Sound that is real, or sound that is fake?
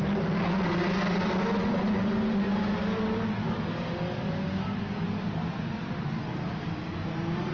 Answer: real